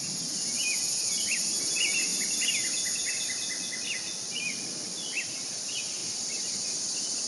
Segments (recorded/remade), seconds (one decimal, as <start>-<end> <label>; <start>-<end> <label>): 0.0-6.0 recorded; 6.0-6.8 remade; 6.8-7.3 recorded